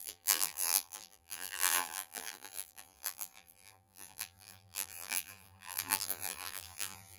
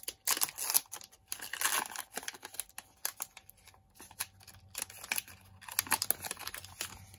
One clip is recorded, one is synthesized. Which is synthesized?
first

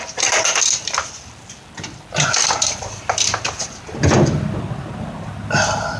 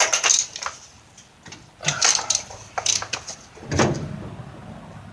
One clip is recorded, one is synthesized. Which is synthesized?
first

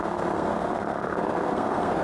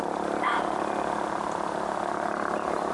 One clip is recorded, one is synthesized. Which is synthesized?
first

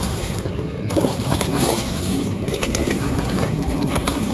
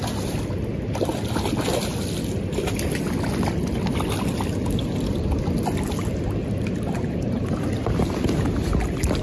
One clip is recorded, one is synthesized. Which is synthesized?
first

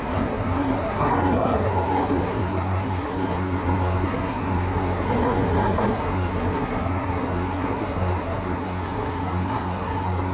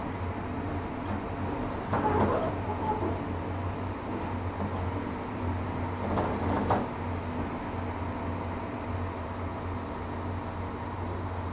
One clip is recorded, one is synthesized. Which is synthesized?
first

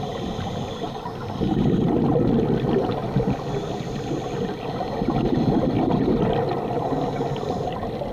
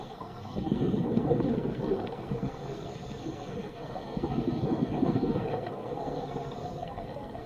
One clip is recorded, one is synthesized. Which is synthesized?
second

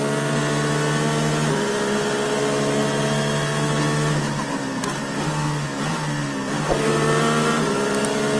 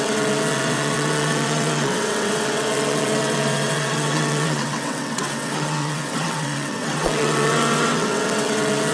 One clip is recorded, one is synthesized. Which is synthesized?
second